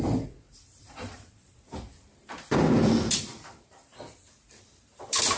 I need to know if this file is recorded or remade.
remade